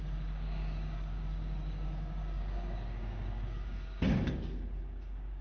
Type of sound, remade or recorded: remade